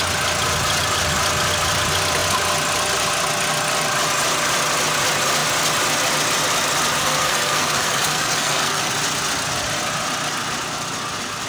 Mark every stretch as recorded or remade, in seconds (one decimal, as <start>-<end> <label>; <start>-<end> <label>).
0.0-7.0 recorded; 7.0-8.9 remade; 8.9-11.5 recorded